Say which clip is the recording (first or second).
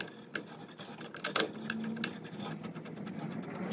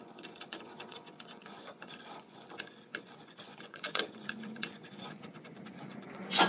first